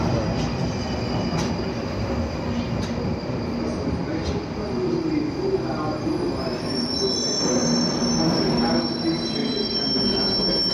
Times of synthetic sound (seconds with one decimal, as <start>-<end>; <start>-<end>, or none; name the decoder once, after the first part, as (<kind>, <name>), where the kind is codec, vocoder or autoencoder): none